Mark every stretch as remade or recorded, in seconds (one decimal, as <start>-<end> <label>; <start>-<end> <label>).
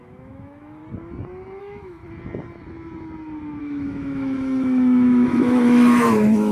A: 0.0-0.8 remade; 0.8-1.6 recorded; 1.6-2.0 remade; 2.0-3.6 recorded; 3.6-6.5 remade